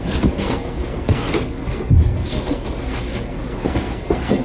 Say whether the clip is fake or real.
fake